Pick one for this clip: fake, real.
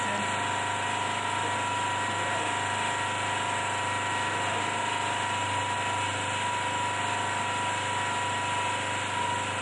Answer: real